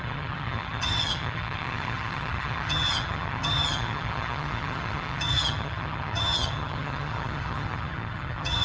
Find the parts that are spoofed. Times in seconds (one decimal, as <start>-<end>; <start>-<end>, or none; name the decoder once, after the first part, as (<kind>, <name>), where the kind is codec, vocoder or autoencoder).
0.0-8.6 (vocoder, HiFi-GAN)